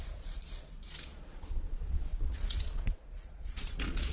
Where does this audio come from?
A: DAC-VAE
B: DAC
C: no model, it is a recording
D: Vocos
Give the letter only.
D